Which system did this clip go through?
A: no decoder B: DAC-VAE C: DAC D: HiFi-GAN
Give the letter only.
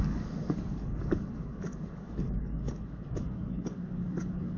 C